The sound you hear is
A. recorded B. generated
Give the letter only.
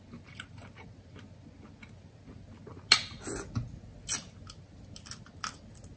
A